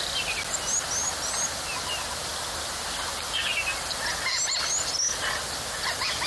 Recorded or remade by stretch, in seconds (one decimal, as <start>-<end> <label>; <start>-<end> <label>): 0.0-6.3 recorded